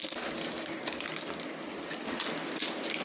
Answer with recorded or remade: recorded